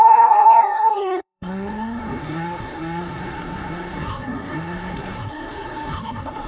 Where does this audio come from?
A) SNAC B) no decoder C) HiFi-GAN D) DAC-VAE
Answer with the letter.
A